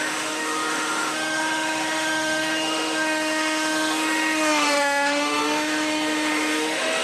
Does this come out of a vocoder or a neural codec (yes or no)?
yes